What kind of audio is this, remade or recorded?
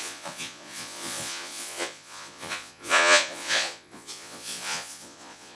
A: remade